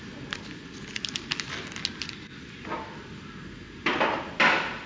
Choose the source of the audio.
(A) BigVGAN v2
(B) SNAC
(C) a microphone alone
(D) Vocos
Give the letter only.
C